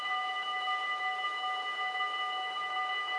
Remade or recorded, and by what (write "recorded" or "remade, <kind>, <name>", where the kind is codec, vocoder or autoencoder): remade, autoencoder, DAC-VAE